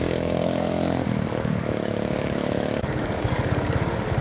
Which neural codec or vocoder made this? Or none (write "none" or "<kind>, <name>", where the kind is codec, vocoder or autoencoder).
codec, DAC